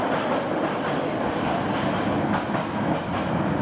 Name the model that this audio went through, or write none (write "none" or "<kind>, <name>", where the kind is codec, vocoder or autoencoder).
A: none